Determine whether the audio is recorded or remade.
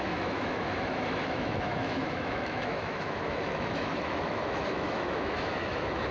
remade